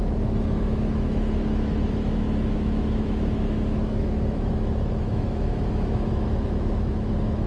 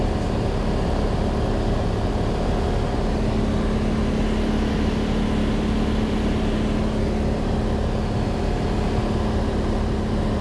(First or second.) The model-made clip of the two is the first